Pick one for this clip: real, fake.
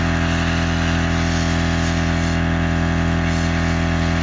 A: real